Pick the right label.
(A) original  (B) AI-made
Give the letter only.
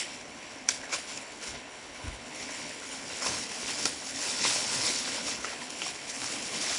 B